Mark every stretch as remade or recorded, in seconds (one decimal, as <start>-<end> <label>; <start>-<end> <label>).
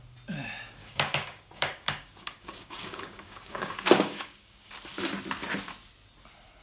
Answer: 0.0-0.8 recorded; 0.8-4.7 remade; 4.7-6.6 recorded